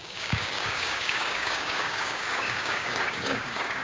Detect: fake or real fake